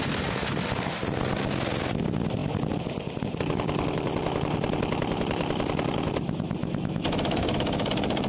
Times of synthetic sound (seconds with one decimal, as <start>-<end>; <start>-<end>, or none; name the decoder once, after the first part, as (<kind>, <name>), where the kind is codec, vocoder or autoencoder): 6.6-7.9 (autoencoder, DAC-VAE)